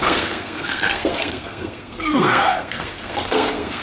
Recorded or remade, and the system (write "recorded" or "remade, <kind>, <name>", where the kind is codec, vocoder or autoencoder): remade, codec, SNAC